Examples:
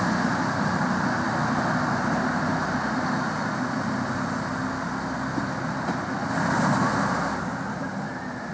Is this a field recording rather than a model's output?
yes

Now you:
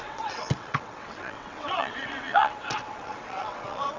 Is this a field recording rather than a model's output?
no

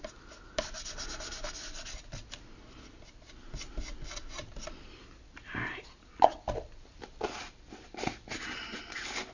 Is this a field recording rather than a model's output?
yes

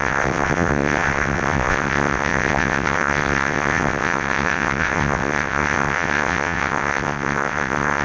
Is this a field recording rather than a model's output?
no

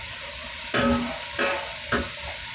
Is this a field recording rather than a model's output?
yes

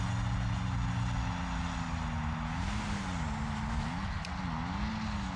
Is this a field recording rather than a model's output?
yes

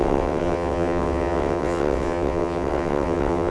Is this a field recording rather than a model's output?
no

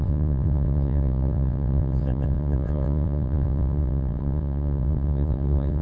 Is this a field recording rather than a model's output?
no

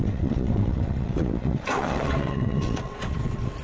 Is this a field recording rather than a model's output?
no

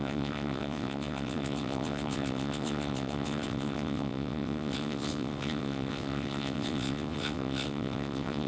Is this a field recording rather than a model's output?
no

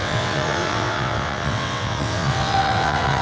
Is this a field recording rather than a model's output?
no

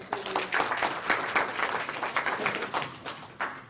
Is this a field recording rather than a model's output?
yes